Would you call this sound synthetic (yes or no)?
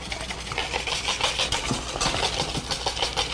no